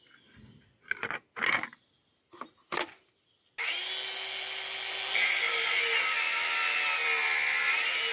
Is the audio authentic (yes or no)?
yes